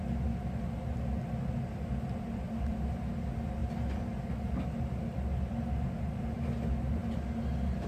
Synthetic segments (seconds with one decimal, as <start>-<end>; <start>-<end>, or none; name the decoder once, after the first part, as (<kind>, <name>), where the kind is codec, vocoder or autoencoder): 0.0-3.6 (vocoder, BigVGAN v2); 5.0-7.9